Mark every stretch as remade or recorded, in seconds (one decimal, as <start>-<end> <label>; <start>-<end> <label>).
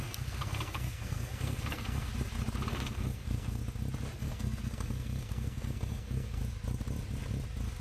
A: 0.0-2.1 remade; 2.1-2.7 recorded; 2.7-3.6 remade; 3.6-4.2 recorded; 4.2-6.4 remade; 6.4-7.8 recorded